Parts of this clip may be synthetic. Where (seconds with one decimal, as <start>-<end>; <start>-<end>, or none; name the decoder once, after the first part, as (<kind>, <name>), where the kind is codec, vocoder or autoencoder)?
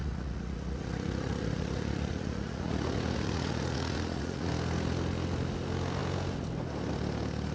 0.0-4.5 (vocoder, Vocos)